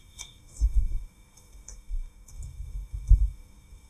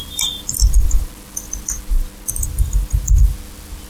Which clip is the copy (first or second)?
first